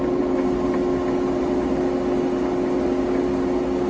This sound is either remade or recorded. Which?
recorded